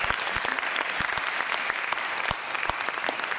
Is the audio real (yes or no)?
no